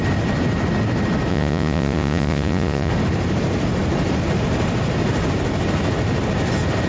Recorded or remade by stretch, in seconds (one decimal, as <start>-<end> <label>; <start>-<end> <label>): 0.0-1.3 recorded; 1.3-2.9 remade; 2.9-6.9 recorded